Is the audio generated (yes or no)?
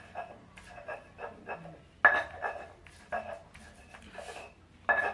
no